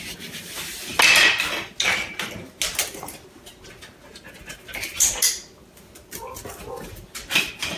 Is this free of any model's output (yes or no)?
yes